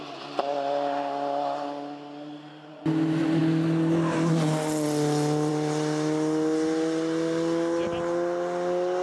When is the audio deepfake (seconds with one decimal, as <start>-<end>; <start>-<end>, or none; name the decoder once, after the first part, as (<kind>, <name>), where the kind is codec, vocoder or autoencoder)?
none